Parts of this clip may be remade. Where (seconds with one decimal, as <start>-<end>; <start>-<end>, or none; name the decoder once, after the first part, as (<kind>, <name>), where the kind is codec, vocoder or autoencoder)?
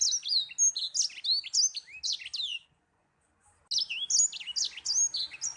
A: 2.5-3.6 (vocoder, Vocos)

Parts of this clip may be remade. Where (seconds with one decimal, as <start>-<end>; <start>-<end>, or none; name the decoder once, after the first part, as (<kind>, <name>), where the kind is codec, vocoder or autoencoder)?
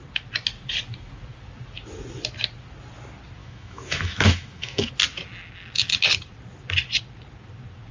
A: 3.4-4.9 (autoencoder, DAC-VAE)